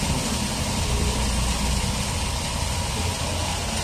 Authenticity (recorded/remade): recorded